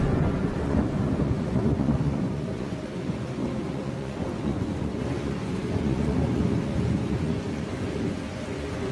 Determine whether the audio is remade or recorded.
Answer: remade